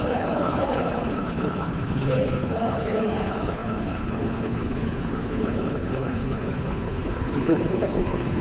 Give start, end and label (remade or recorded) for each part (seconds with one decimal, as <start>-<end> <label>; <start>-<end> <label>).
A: 0.0-8.4 remade